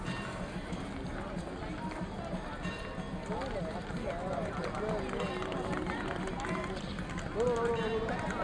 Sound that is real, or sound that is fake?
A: real